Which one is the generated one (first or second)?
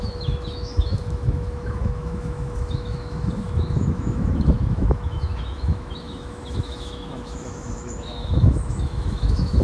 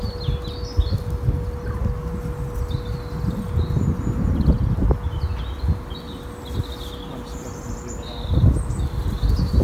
first